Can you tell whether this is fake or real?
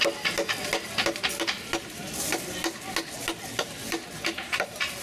real